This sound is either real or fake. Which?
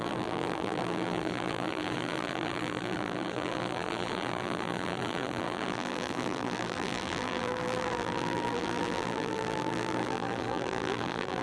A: fake